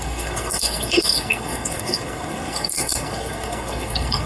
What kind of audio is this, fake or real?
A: fake